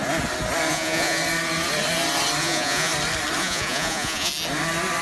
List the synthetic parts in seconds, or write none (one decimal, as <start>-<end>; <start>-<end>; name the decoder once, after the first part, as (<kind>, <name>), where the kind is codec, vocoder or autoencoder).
0.7-1.2 (vocoder, Vocos); 2.4-2.9; 3.4-4.3